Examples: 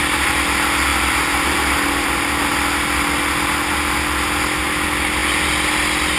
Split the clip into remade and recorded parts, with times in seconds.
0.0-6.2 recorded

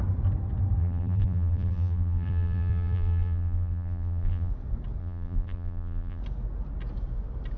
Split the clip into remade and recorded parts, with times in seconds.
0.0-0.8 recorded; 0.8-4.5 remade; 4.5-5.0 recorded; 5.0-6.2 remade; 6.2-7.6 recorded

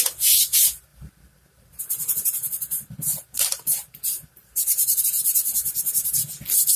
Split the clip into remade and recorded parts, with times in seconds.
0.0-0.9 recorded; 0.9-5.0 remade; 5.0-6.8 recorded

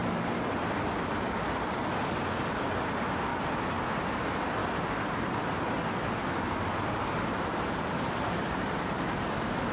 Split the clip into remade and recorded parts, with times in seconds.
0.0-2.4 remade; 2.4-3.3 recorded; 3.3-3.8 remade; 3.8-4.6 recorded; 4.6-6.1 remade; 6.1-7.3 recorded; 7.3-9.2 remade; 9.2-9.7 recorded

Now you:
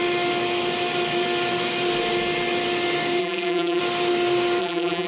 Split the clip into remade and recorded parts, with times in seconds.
0.0-3.2 recorded; 3.2-3.8 remade; 3.8-4.6 recorded; 4.6-5.1 remade

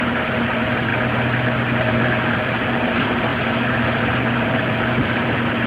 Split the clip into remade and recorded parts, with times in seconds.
0.0-3.3 remade; 3.3-4.1 recorded; 4.1-5.7 remade

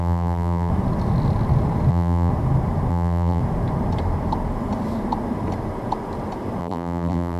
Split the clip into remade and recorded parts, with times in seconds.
0.0-0.7 remade; 0.7-1.9 recorded; 1.9-2.3 remade; 2.3-2.9 recorded; 2.9-3.4 remade; 3.4-6.6 recorded; 6.6-7.4 remade

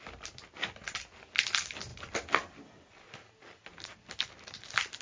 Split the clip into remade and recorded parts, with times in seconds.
0.0-5.0 recorded